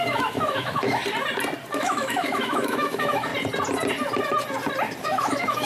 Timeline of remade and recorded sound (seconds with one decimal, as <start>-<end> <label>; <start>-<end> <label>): 0.0-1.0 remade; 1.0-1.7 recorded; 1.7-3.3 remade; 3.3-5.0 recorded; 5.0-5.7 remade